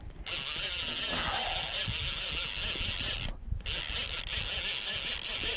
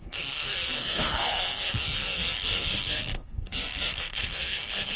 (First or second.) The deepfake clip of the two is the second